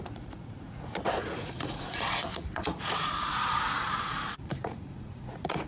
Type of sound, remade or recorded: remade